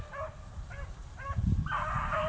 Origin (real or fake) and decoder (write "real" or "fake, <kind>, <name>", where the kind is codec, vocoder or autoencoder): real